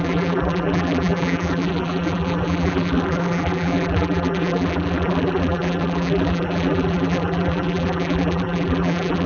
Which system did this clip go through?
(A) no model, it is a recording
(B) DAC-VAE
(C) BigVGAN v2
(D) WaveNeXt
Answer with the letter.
C